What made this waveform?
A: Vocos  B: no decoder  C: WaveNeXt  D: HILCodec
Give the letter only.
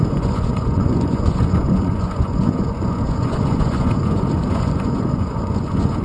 A